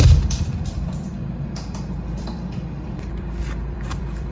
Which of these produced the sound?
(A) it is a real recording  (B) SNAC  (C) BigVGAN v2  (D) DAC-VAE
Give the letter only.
C